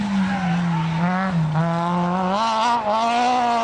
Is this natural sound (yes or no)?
yes